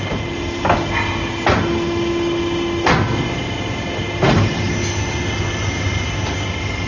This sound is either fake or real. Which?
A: real